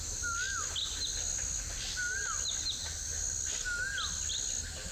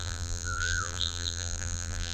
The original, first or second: first